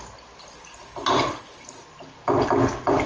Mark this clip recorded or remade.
recorded